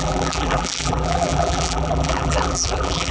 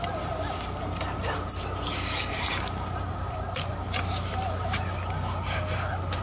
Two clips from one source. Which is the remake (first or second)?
first